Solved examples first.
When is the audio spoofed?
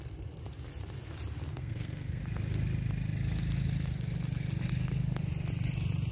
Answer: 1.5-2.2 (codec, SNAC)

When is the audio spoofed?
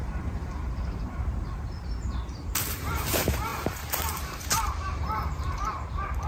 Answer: 0.0-6.3 (vocoder, BigVGAN v2)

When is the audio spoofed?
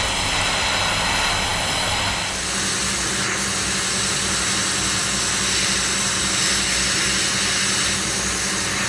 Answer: none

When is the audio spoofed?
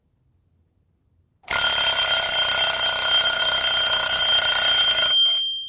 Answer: none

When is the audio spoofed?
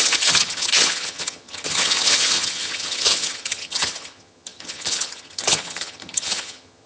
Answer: 0.0-6.9 (vocoder, HiFi-GAN)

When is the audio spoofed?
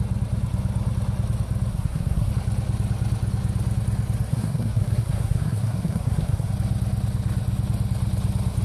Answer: 1.7-2.3 (codec, SNAC); 4.3-6.5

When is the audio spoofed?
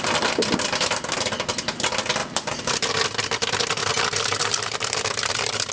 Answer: 2.2-3.0 (vocoder, BigVGAN v2); 3.8-5.7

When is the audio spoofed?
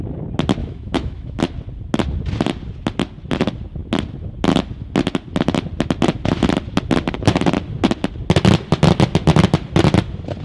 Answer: 0.6-1.4 (autoencoder, DAC-VAE)